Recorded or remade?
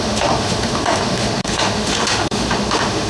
remade